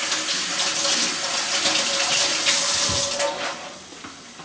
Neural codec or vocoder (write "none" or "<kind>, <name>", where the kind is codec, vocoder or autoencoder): none